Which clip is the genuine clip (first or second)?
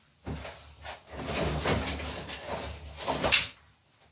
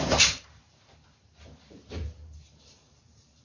first